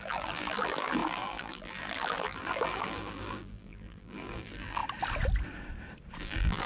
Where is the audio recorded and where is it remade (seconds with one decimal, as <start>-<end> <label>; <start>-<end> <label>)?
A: 0.0-4.8 remade; 4.8-6.2 recorded; 6.2-6.7 remade